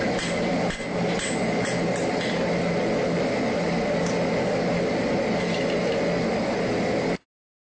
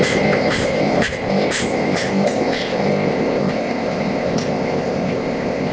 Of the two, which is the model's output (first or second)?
second